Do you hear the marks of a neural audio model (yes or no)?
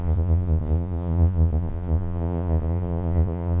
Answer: yes